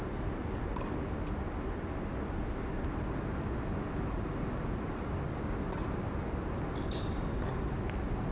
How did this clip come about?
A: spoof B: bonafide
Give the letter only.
B